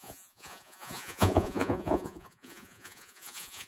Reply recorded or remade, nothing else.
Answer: remade